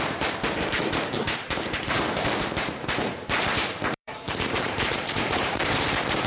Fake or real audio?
fake